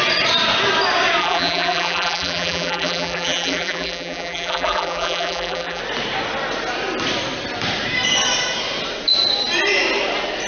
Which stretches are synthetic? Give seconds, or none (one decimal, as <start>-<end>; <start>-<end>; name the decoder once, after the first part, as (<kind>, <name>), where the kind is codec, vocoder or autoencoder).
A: 1.2-5.8 (vocoder, BigVGAN v2)